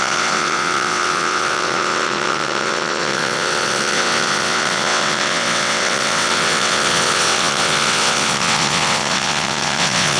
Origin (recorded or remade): remade